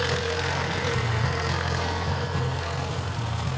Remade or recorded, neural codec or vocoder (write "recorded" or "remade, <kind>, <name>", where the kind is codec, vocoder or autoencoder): remade, codec, SNAC